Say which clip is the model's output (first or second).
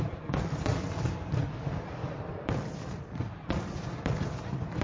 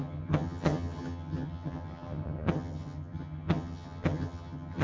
second